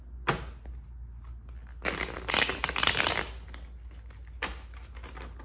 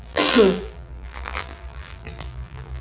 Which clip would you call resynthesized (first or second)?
second